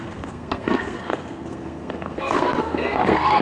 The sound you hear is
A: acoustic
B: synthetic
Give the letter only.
B